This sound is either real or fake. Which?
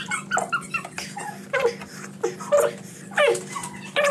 real